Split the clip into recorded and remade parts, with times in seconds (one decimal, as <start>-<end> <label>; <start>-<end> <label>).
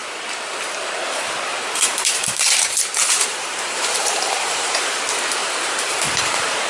0.0-1.5 recorded; 1.5-5.0 remade; 5.0-5.4 recorded; 5.4-6.7 remade